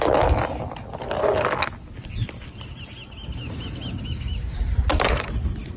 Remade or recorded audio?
recorded